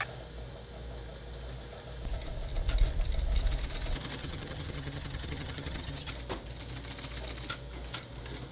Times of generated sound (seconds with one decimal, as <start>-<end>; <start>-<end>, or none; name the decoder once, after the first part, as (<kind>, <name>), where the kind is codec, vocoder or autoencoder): 4.2-6.1 (vocoder, HiFi-GAN)